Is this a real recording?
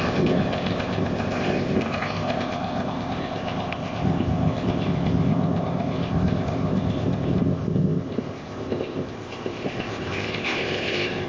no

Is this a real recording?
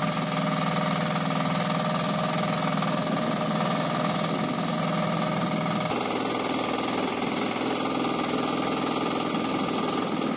yes